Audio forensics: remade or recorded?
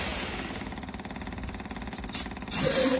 recorded